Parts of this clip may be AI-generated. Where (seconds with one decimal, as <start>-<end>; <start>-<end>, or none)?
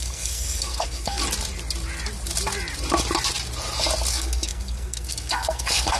0.0-1.2; 4.1-6.0